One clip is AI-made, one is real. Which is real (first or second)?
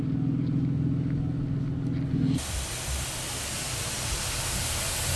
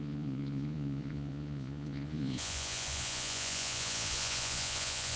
first